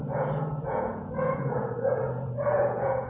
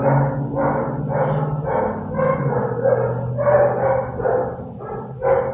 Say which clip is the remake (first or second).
first